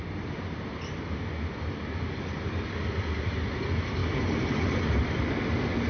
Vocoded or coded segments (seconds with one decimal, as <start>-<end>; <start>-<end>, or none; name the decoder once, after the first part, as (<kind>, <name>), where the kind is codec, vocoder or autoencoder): 4.0-5.2 (vocoder, BigVGAN v2)